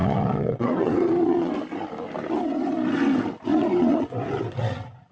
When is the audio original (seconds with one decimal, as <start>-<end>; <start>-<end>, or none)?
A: 1.5-3.5; 4.1-5.1